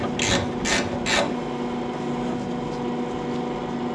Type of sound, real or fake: real